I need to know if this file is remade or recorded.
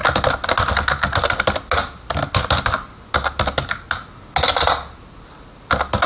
recorded